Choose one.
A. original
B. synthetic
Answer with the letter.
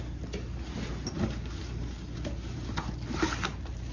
A